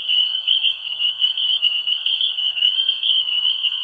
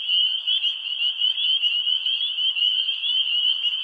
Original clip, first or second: second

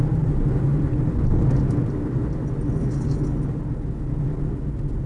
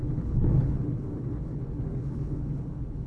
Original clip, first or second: first